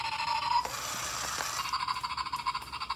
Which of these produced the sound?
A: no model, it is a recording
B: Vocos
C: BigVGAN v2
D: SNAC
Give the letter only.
A